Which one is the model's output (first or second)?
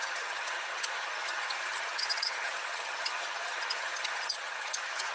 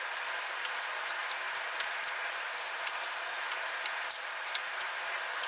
first